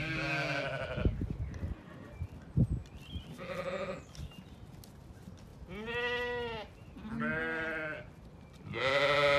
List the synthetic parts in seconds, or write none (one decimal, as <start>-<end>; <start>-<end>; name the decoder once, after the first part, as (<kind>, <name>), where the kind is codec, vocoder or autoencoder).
none